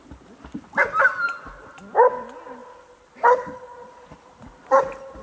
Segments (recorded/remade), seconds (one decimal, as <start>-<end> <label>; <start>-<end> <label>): 0.0-2.6 recorded; 2.6-4.5 remade; 4.5-5.2 recorded